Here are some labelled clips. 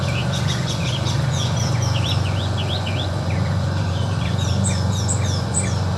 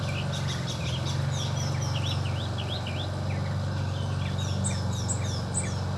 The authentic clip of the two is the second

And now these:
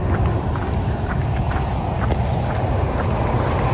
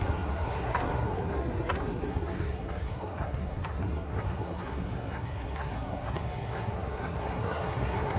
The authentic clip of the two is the first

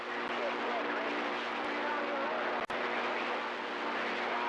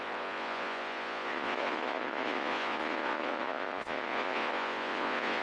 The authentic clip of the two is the first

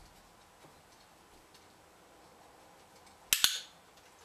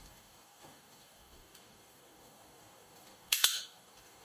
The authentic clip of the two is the first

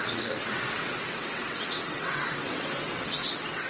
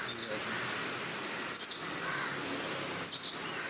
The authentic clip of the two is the second